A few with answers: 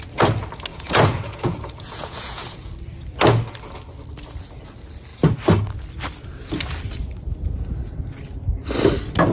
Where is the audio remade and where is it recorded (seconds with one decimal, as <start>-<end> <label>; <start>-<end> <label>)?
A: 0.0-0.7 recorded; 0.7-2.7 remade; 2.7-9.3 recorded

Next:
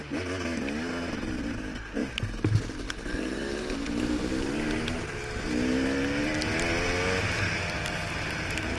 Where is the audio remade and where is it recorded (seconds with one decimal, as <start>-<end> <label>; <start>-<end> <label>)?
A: 0.0-8.8 recorded

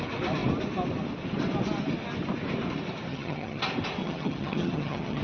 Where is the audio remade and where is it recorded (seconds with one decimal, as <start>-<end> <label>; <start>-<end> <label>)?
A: 0.0-3.1 recorded; 3.1-3.6 remade; 3.6-4.0 recorded; 4.0-5.2 remade

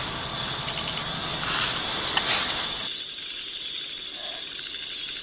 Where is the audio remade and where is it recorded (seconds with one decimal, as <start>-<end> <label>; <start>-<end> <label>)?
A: 0.0-5.2 recorded

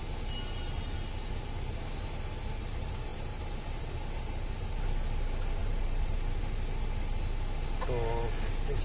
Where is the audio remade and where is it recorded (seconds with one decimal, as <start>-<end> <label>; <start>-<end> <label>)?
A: 0.0-3.1 recorded; 3.1-3.8 remade; 3.8-5.6 recorded; 5.6-6.4 remade; 6.4-8.8 recorded

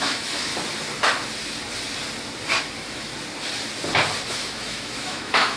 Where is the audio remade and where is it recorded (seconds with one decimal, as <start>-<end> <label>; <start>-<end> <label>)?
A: 0.0-0.5 remade; 0.5-2.6 recorded; 2.6-3.1 remade; 3.1-4.3 recorded; 4.3-5.6 remade